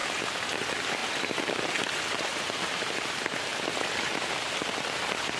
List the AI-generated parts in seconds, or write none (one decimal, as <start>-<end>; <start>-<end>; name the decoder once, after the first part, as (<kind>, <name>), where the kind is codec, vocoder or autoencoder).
3.5-4.3 (vocoder, BigVGAN v2)